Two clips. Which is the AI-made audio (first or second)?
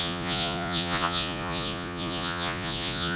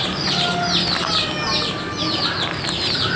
first